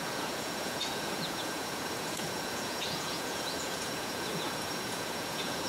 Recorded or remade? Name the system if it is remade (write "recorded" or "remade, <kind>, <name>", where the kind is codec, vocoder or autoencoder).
remade, vocoder, Vocos